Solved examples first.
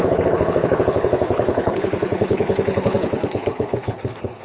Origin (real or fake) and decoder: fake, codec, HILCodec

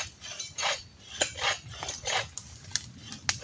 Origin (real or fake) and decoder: real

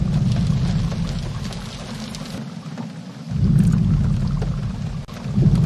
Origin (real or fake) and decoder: real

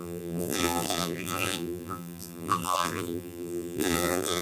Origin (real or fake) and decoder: fake, vocoder, BigVGAN v2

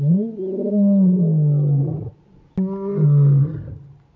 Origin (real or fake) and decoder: real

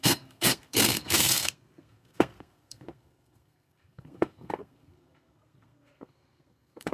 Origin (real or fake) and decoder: fake, codec, SNAC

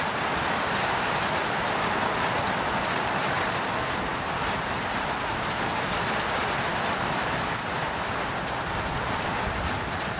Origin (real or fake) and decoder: real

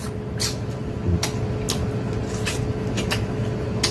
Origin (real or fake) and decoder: real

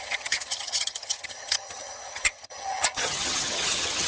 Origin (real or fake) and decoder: fake, vocoder, HiFi-GAN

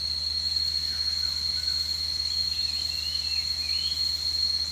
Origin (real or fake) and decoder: real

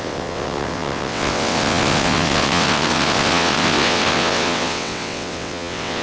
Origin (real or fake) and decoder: fake, vocoder, WaveNeXt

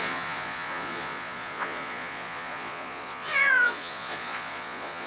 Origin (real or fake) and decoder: fake, vocoder, Vocos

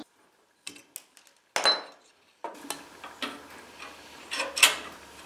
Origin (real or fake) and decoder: real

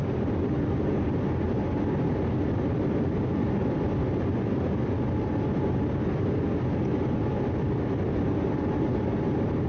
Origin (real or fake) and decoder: real